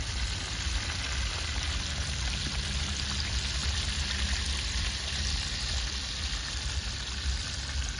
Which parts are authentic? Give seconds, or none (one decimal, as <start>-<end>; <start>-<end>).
0.0-3.6; 5.6-8.0